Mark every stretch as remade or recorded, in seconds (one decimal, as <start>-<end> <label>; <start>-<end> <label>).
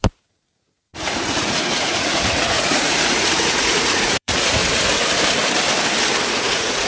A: 0.0-4.6 remade; 4.6-6.3 recorded; 6.3-6.9 remade